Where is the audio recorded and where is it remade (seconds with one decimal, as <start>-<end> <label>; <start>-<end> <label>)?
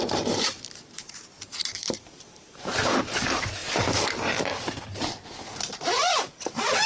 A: 0.0-3.6 remade; 3.6-4.2 recorded; 4.2-6.9 remade